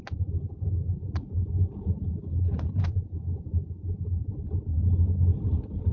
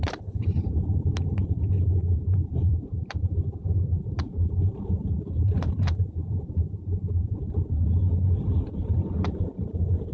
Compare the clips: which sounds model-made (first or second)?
second